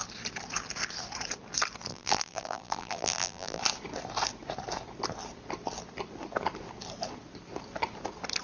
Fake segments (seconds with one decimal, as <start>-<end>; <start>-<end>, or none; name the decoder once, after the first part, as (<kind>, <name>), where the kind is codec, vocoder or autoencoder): 1.9-3.6 (vocoder, BigVGAN v2)

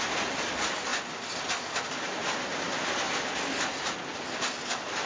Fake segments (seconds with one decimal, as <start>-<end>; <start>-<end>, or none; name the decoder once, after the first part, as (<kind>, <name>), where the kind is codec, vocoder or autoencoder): none

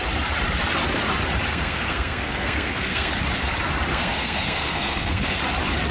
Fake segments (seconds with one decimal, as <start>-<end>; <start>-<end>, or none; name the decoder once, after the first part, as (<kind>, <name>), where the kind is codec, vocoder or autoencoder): 1.5-3.1 (codec, SNAC); 3.9-5.4

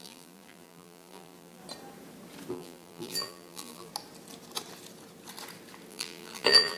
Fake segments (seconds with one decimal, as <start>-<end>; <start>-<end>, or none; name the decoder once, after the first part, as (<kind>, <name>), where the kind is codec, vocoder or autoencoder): 0.0-1.6 (vocoder, BigVGAN v2); 2.5-3.9; 5.9-6.8

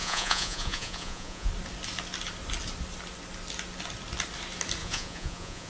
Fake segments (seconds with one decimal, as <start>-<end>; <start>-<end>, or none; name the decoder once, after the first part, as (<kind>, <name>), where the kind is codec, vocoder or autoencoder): 0.0-1.5 (vocoder, Vocos); 4.8-5.7